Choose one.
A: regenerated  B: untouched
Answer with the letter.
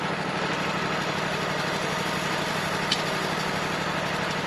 A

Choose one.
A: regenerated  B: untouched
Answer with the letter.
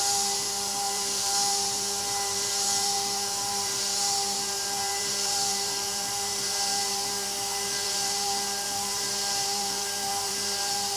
A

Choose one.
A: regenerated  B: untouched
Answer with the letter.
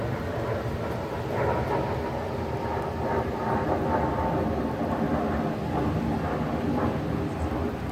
B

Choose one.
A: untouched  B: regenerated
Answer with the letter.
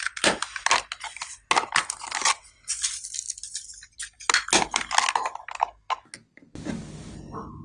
A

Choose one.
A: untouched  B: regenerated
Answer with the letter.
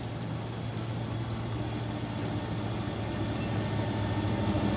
A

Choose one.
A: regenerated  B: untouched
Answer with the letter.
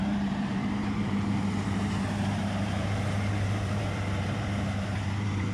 A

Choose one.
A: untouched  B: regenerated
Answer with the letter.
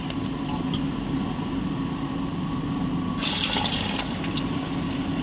A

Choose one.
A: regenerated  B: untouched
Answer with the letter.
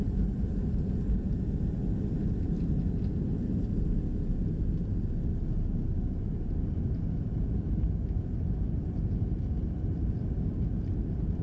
B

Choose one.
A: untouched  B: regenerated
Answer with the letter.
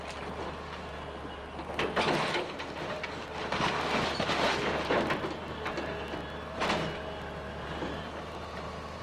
A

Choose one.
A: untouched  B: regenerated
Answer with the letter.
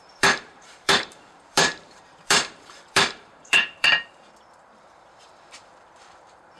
B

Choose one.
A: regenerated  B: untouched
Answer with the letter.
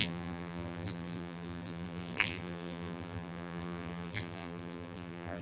A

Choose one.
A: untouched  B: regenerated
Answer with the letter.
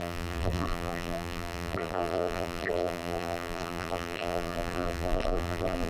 B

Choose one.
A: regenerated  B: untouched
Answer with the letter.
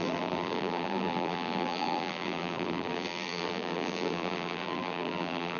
A